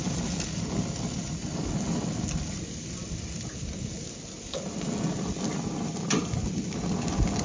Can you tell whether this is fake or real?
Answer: real